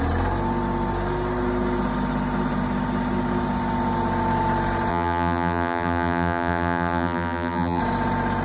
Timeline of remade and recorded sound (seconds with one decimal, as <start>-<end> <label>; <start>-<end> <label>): 0.0-4.9 recorded; 4.9-7.8 remade; 7.8-8.4 recorded